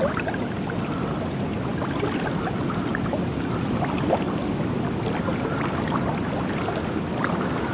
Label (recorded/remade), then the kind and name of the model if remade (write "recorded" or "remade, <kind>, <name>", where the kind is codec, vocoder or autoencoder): recorded